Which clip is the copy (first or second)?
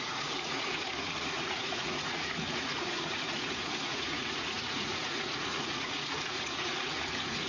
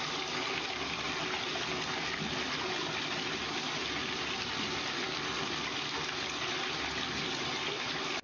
first